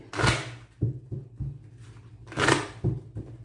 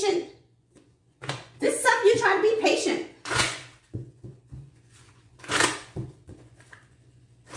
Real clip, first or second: first